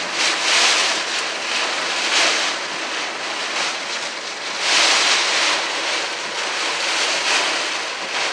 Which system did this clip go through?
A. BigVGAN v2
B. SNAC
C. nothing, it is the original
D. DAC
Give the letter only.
C